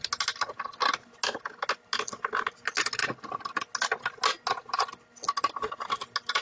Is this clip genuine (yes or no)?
yes